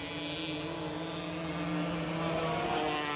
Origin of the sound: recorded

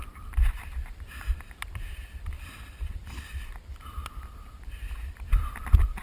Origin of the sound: remade